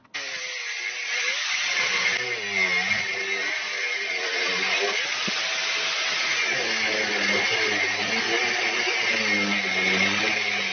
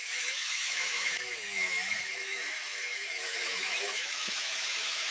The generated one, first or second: second